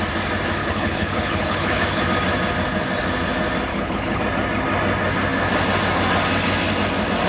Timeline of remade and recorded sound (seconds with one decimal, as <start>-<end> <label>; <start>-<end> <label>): 0.0-0.6 recorded; 0.6-2.0 remade; 2.0-3.7 recorded; 3.7-4.2 remade; 4.2-7.3 recorded